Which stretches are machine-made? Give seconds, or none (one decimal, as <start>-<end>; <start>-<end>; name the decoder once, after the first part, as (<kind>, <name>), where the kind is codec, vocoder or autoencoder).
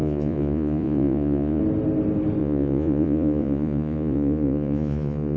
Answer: 0.0-1.6 (vocoder, Vocos); 2.4-5.4